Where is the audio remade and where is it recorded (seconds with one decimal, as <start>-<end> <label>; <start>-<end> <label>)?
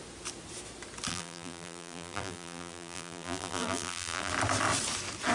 0.0-1.1 recorded; 1.1-4.3 remade; 4.3-5.3 recorded